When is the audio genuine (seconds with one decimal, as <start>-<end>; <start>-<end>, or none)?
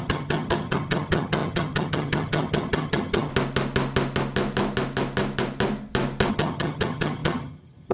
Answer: 3.3-6.3